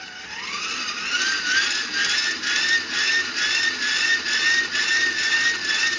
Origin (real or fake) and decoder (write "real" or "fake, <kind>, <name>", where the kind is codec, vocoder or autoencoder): fake, vocoder, BigVGAN v2